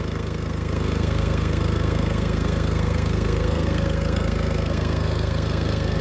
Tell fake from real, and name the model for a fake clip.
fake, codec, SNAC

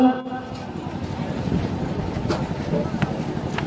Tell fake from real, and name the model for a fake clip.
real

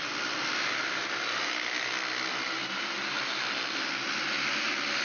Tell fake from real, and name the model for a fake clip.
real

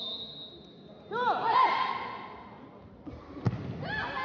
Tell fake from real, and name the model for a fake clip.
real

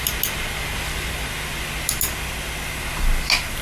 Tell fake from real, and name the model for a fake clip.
real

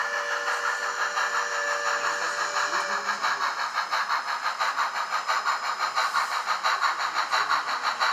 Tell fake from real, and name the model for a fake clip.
real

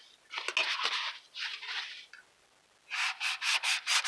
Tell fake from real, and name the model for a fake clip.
real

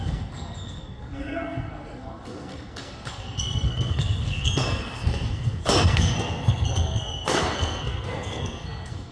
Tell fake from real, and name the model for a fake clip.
fake, codec, SNAC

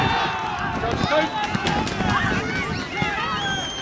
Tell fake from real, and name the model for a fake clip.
real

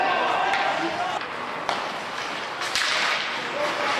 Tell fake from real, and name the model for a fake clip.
real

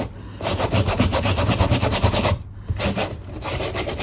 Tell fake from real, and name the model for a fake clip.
real